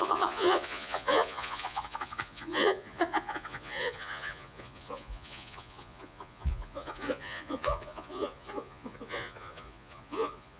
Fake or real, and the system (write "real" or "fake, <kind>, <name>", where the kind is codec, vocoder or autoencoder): fake, vocoder, Vocos